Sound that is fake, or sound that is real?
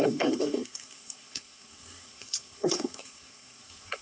fake